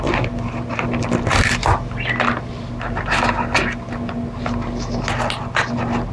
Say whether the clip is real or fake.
real